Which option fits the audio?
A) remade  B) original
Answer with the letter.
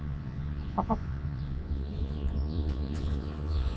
A